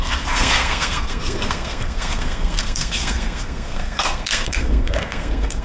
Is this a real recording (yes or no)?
no